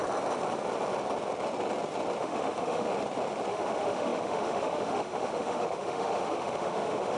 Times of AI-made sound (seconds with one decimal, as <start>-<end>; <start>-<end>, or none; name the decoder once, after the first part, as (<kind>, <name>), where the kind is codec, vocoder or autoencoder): 2.2-2.9 (autoencoder, DAC-VAE); 3.5-7.2